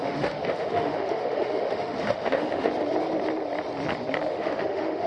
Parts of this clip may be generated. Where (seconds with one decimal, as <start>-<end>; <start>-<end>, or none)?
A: 0.0-2.7; 4.3-5.1